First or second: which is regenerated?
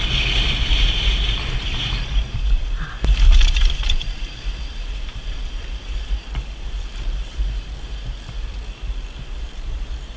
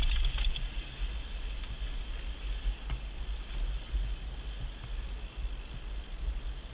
first